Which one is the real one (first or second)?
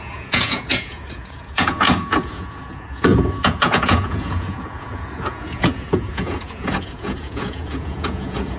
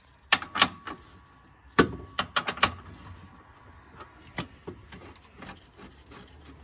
second